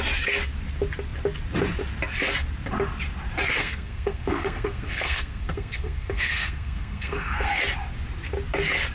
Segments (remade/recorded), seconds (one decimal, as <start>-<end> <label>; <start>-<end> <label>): 0.0-3.6 recorded; 3.6-7.6 remade; 7.6-8.9 recorded